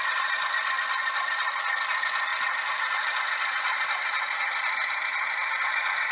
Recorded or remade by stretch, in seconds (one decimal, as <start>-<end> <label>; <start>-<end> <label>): 0.0-2.3 recorded; 2.3-5.5 remade; 5.5-6.1 recorded

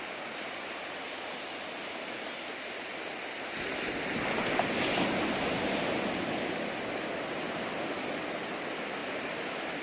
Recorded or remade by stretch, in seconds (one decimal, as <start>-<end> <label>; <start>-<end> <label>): 0.0-9.0 recorded; 9.0-9.8 remade

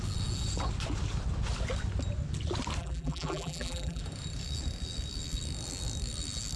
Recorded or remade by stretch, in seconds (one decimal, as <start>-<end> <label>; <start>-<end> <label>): 0.0-2.8 recorded; 2.8-4.0 remade; 4.0-6.6 recorded

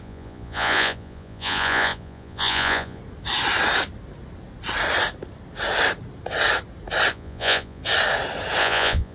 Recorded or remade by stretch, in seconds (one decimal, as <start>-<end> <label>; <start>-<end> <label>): 0.0-3.0 remade; 3.0-7.1 recorded; 7.1-7.8 remade; 7.8-8.6 recorded; 8.6-9.1 remade

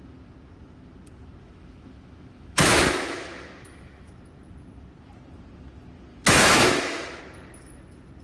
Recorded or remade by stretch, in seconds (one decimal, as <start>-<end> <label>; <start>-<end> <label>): 0.0-1.4 recorded; 1.4-4.1 remade; 4.1-6.1 recorded; 6.1-7.2 remade; 7.2-8.2 recorded

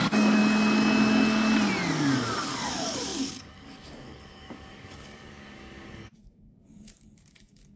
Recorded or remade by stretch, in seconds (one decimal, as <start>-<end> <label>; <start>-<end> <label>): 0.0-0.4 remade; 0.4-1.9 recorded; 1.9-7.8 remade

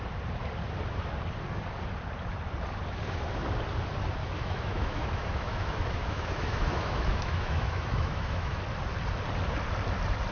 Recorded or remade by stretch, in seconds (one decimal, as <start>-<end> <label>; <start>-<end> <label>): 0.0-4.2 recorded; 4.2-8.6 remade; 8.6-10.3 recorded

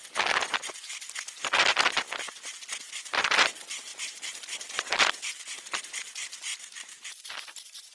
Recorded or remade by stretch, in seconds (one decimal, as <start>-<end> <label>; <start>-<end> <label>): 0.0-3.9 recorded; 3.9-5.9 remade; 5.9-6.5 recorded; 6.5-7.3 remade; 7.3-7.9 recorded